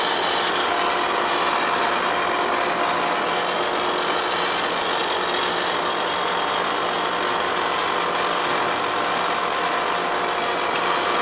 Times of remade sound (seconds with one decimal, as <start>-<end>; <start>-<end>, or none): none